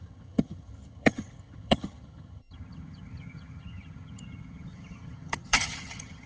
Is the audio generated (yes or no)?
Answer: yes